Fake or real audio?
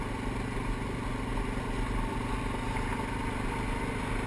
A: real